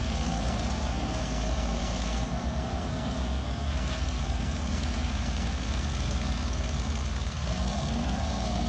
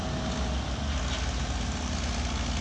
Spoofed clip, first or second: first